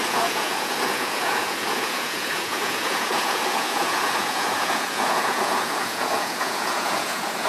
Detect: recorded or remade remade